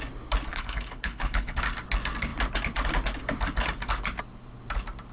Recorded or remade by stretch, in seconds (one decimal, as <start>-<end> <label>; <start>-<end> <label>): 0.0-0.5 recorded; 0.5-1.6 remade; 1.6-5.1 recorded

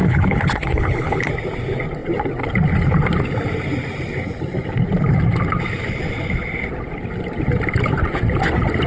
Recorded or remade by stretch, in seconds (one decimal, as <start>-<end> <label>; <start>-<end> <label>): 0.0-1.3 remade; 1.3-8.9 recorded

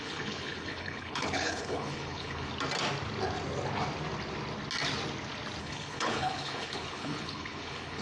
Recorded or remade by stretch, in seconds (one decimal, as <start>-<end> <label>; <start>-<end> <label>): 0.0-2.5 remade; 2.5-5.6 recorded; 5.6-8.0 remade